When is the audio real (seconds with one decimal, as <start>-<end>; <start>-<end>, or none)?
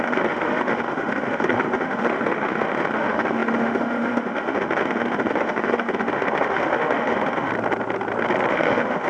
7.5-8.5